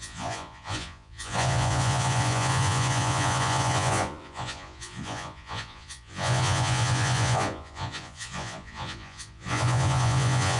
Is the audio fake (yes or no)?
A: yes